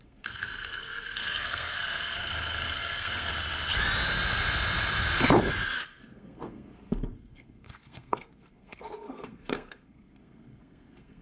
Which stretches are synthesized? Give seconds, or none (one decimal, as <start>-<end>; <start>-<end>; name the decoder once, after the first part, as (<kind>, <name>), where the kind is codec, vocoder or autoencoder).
0.0-3.3 (codec, SNAC); 5.8-11.2